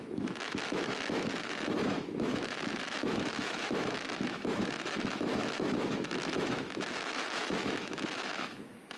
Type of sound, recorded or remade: remade